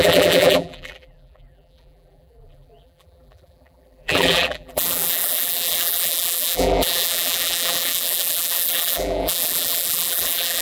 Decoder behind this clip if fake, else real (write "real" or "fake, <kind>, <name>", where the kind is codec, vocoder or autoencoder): fake, vocoder, BigVGAN v2